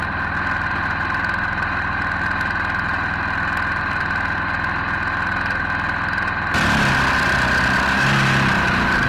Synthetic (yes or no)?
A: no